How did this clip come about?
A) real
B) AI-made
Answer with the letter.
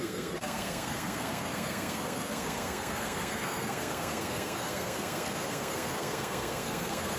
B